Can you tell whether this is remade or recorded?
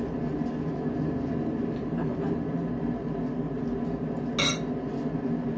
recorded